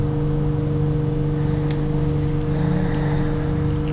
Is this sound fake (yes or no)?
no